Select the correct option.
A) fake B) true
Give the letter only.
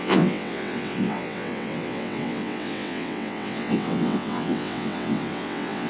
A